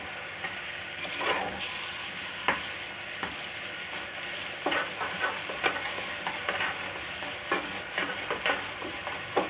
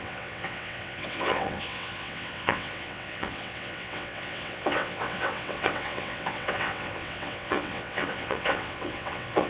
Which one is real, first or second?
first